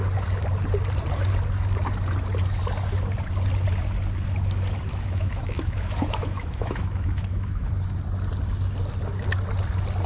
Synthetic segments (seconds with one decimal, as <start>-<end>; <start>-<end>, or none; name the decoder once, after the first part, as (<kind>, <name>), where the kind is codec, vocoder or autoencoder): 4.9-7.7 (autoencoder, DAC-VAE)